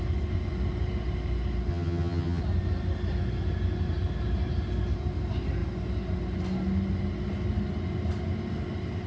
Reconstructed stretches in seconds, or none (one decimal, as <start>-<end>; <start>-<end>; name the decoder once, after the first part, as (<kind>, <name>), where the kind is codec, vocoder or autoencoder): 1.7-2.4 (vocoder, HiFi-GAN)